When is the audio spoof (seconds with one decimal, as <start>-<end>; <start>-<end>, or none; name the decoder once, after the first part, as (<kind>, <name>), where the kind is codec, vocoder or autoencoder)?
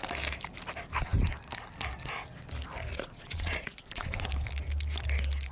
2.9-4.3 (vocoder, Vocos)